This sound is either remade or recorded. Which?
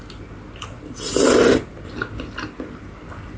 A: recorded